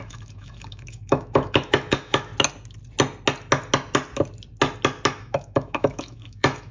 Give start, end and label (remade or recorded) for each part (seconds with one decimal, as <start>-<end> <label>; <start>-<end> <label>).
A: 0.0-2.3 remade; 2.3-5.2 recorded; 5.2-6.7 remade